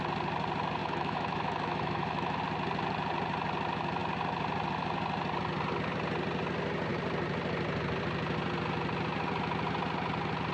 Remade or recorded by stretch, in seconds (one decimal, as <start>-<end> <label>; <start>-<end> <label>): 0.0-0.8 recorded; 0.8-2.4 remade; 2.4-10.5 recorded